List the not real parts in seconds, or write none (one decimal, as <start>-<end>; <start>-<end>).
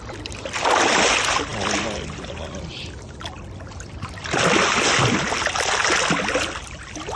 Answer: none